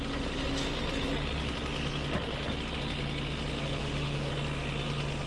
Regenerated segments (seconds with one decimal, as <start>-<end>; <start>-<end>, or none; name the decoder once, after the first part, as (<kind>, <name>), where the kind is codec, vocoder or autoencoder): 3.8-4.3 (autoencoder, DAC-VAE)